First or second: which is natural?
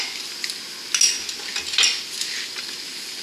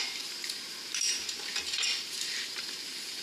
first